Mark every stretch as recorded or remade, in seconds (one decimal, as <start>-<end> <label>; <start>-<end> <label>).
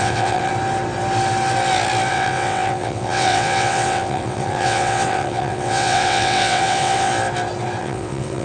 0.0-0.5 remade; 0.5-2.1 recorded; 2.1-7.1 remade; 7.1-7.8 recorded; 7.8-8.4 remade